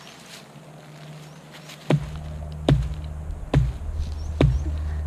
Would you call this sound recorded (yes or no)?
yes